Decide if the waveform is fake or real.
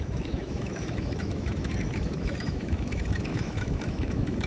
fake